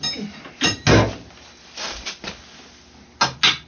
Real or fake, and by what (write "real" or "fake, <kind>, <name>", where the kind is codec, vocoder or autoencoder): real